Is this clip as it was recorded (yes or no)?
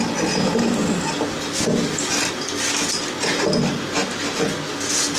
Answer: yes